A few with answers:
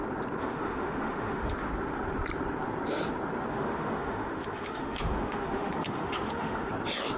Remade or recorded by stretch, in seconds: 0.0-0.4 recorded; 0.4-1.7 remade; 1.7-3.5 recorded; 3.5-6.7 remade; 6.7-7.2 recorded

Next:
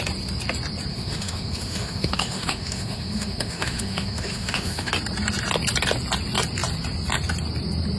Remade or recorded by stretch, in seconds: 0.0-0.9 recorded; 0.9-4.9 remade; 4.9-8.0 recorded